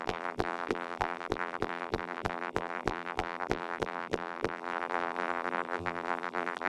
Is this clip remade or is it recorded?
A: remade